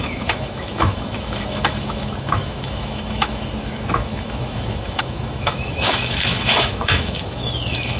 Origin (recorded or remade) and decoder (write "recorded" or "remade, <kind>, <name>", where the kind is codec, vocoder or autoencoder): remade, autoencoder, DAC-VAE